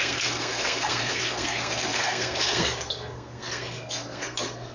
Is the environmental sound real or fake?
fake